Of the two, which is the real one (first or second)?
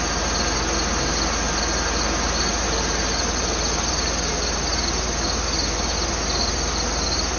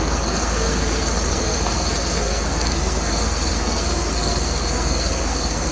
first